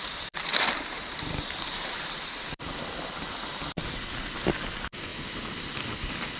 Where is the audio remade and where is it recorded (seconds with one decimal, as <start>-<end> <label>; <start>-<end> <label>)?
0.0-0.4 recorded; 0.4-2.9 remade; 2.9-6.4 recorded